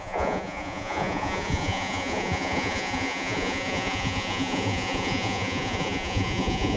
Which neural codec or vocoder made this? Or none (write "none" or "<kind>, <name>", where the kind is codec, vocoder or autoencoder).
vocoder, Vocos